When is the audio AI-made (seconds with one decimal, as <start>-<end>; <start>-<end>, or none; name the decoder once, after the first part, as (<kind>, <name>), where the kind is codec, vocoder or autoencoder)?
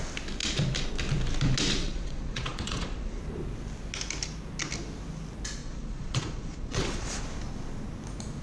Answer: 1.8-3.2 (vocoder, Vocos); 5.6-7.2